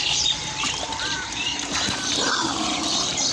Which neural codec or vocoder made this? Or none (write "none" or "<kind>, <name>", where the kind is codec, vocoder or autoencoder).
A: vocoder, BigVGAN v2